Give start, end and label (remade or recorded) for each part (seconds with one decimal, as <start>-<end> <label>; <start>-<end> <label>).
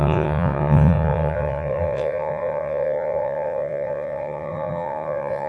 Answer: 0.0-5.5 remade